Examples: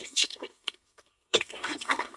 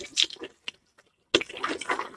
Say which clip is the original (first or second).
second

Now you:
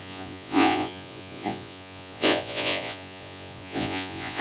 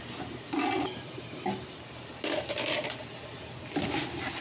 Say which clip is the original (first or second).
second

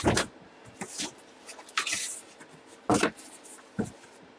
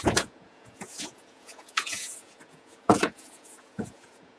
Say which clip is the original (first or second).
first